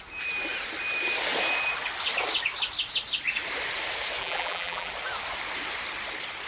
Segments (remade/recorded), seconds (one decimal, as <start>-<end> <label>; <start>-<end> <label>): 0.0-4.2 recorded; 4.2-4.9 remade; 4.9-6.5 recorded